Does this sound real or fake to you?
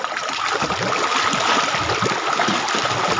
real